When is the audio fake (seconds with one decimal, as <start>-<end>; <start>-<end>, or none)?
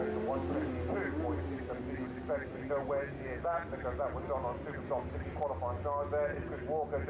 none